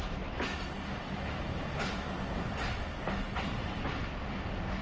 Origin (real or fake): real